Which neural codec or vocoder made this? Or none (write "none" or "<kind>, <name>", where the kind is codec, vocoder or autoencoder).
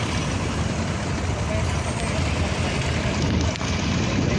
none